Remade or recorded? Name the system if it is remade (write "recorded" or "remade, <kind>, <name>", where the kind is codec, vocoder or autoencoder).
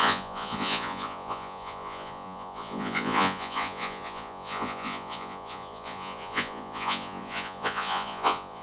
remade, vocoder, Vocos